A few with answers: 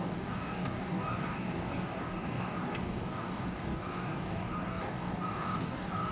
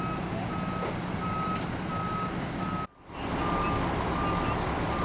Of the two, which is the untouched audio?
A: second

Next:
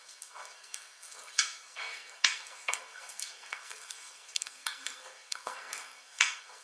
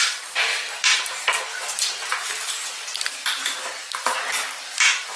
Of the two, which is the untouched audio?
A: second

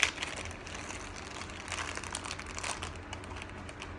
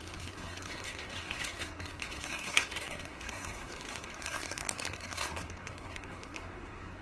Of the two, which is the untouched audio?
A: first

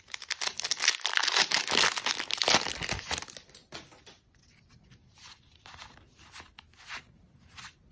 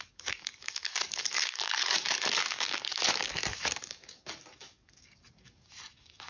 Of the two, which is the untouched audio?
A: first